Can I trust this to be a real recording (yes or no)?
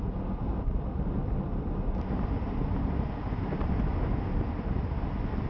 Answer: yes